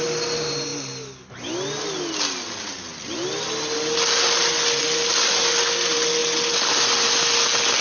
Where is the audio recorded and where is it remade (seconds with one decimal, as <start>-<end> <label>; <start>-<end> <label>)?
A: 0.0-7.8 recorded